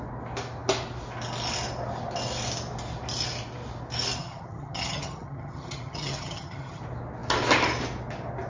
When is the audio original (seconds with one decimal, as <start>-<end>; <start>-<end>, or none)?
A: 0.0-4.2; 6.8-8.5